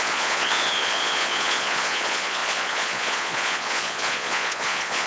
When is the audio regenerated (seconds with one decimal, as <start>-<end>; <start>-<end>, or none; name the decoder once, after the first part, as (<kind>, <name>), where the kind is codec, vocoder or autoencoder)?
0.0-5.1 (vocoder, Vocos)